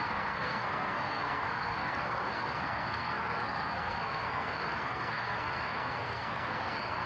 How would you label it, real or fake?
fake